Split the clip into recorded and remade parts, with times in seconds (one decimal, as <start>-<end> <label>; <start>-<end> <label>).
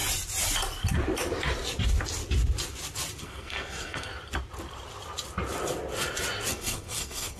0.0-3.2 recorded; 3.2-4.1 remade; 4.1-6.5 recorded; 6.5-7.4 remade